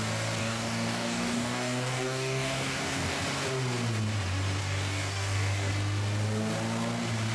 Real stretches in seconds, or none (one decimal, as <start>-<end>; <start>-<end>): 0.0-0.4; 3.2-4.6; 5.7-7.3